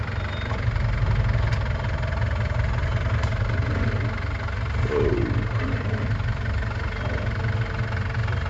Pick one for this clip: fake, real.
real